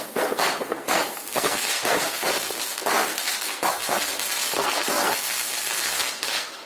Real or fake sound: fake